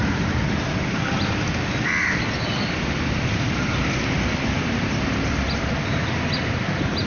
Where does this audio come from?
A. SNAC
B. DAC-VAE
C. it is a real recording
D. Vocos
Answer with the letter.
C